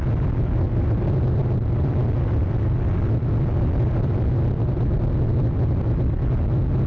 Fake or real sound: real